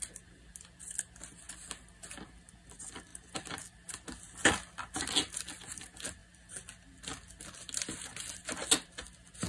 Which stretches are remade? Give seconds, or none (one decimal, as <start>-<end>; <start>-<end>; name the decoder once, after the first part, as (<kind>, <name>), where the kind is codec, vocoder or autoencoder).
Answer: none